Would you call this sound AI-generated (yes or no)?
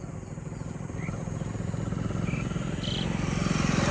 no